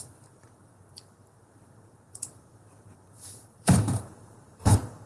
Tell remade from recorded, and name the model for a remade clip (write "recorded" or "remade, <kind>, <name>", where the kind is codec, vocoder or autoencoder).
remade, vocoder, BigVGAN v2